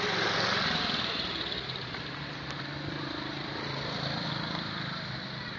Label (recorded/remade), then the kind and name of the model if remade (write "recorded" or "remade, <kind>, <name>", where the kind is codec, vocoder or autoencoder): remade, vocoder, BigVGAN v2